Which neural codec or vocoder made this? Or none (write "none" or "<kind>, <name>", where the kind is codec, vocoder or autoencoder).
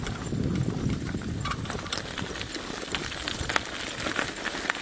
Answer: vocoder, BigVGAN v2